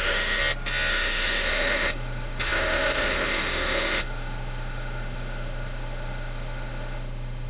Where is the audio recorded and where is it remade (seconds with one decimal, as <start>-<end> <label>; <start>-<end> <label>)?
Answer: 0.0-0.4 remade; 0.4-0.9 recorded; 0.9-7.5 remade